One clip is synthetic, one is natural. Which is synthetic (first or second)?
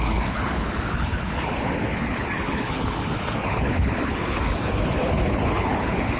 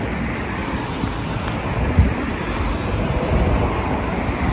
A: first